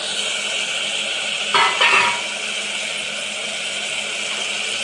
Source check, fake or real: real